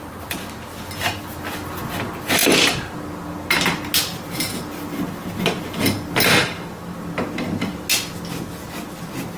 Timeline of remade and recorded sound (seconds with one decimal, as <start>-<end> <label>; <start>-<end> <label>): 0.0-9.4 recorded